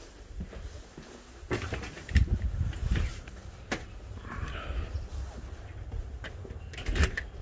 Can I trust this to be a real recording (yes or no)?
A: yes